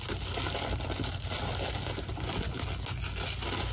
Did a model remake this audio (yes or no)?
no